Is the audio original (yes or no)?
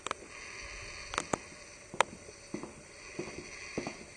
yes